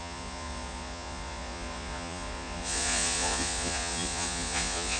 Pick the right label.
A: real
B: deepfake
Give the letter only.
B